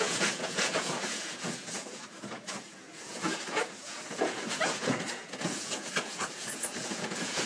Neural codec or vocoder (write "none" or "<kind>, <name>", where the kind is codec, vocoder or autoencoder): vocoder, Vocos